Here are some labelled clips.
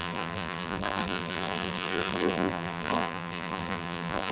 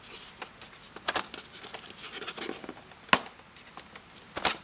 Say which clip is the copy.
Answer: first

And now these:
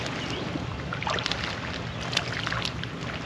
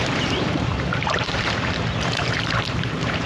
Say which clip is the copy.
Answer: second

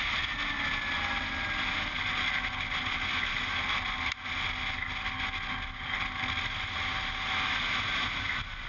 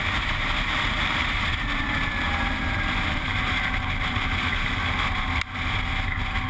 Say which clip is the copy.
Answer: second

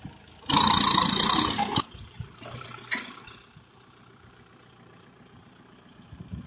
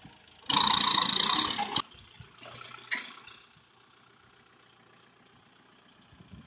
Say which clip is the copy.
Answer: first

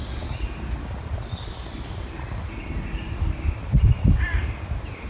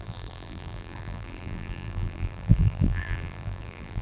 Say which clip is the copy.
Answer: second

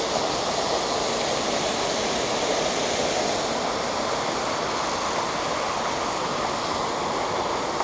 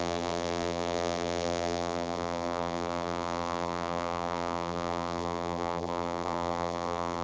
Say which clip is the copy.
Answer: second